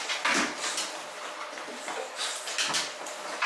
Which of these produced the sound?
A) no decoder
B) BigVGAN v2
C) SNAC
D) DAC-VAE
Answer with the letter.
A